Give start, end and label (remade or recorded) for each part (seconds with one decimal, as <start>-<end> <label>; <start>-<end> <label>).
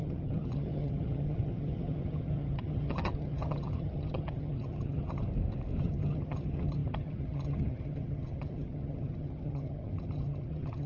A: 0.0-5.3 remade; 5.3-5.8 recorded; 5.8-10.9 remade